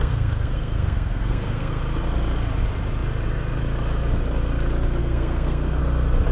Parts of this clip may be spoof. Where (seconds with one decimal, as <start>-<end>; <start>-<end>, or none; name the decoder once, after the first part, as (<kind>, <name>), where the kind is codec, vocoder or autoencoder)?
0.0-1.8 (codec, SNAC); 5.0-5.8